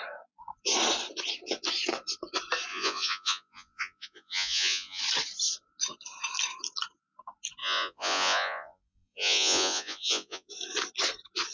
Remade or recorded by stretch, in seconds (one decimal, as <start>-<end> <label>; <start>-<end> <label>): 0.0-2.7 recorded; 2.7-5.0 remade; 5.0-7.6 recorded; 7.6-10.5 remade; 10.5-11.5 recorded